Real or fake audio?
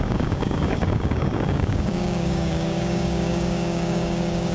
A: fake